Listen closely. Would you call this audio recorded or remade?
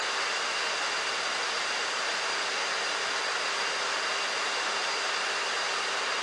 recorded